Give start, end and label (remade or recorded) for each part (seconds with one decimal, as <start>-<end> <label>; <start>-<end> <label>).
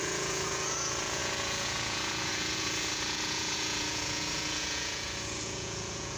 0.0-6.2 remade